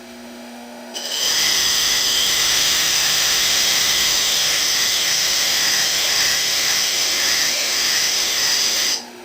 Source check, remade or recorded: remade